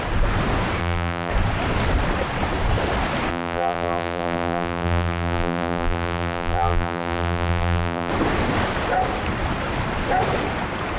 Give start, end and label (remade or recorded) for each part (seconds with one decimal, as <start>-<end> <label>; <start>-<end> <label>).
0.0-0.8 recorded; 0.8-1.3 remade; 1.3-3.3 recorded; 3.3-8.1 remade; 8.1-11.0 recorded